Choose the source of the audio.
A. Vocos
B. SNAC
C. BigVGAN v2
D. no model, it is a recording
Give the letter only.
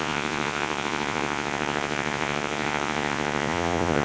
A